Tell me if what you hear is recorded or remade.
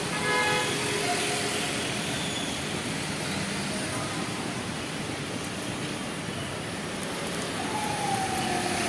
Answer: recorded